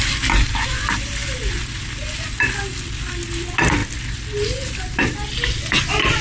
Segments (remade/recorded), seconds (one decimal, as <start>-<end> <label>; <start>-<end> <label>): 0.0-6.2 recorded